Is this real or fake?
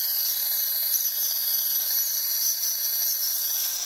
real